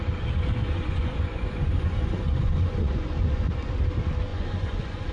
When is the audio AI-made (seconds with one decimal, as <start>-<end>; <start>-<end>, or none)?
0.6-3.7; 4.3-5.1